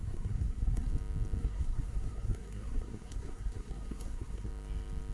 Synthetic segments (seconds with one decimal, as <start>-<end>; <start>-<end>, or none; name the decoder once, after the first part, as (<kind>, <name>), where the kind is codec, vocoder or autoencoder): 0.0-0.9 (codec, SNAC); 1.4-4.5